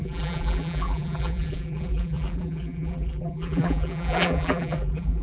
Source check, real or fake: fake